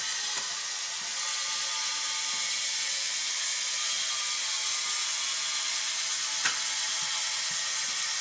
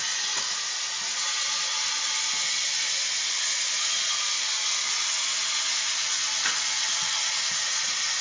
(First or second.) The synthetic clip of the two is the second